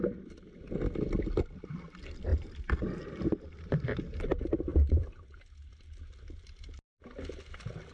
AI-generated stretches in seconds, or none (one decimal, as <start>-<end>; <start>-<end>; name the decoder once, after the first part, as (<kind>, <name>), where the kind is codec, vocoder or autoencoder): 2.3-3.8 (vocoder, BigVGAN v2); 4.7-5.4